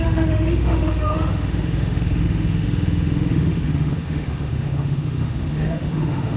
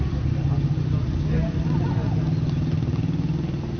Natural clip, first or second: second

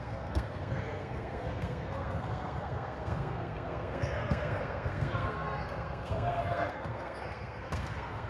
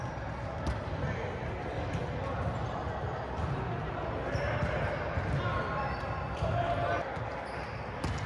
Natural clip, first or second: second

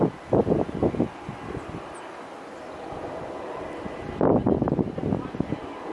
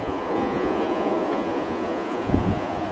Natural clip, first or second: first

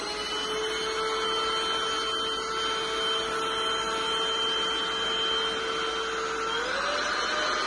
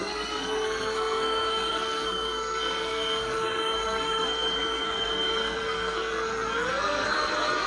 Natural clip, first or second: first